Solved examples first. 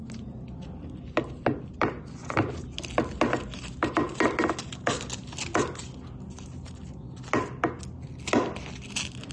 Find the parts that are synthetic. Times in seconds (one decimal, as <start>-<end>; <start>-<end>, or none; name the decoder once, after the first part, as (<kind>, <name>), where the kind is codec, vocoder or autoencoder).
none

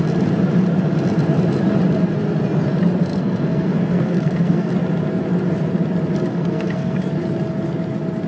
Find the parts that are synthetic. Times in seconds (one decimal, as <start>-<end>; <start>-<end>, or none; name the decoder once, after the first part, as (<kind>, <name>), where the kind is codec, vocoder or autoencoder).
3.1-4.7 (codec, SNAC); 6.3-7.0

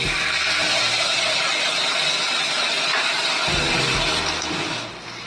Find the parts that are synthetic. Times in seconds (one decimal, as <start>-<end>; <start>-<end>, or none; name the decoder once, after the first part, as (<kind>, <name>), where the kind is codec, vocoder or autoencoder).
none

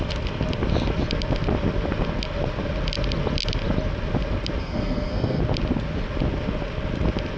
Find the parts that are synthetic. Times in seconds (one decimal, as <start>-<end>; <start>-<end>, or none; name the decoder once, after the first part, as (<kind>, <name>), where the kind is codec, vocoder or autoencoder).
4.6-5.4 (codec, SNAC)